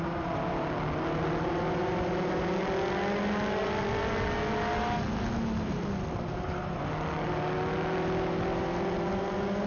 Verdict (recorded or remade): recorded